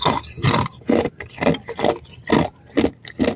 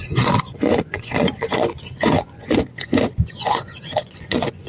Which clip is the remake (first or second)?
second